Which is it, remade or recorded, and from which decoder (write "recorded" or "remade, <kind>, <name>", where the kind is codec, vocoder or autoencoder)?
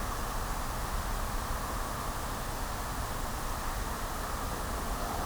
recorded